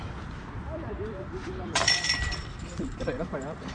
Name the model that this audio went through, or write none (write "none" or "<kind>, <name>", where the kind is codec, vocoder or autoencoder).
vocoder, BigVGAN v2